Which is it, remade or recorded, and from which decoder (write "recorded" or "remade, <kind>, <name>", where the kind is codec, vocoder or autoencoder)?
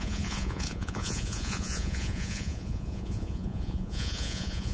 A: remade, vocoder, Vocos